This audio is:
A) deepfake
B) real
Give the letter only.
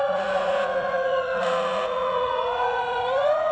A